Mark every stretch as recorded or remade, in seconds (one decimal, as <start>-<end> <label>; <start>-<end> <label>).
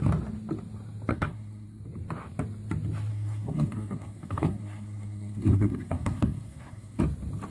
0.0-1.1 recorded; 1.1-1.8 remade; 1.8-3.1 recorded; 3.1-7.0 remade; 7.0-7.5 recorded